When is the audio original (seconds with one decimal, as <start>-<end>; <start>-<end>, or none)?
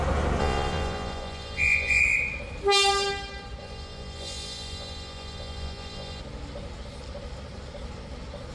0.0-0.4; 2.0-3.6; 6.2-8.5